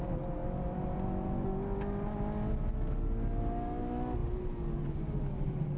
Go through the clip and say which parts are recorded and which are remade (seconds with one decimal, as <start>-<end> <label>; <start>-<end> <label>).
0.0-5.8 recorded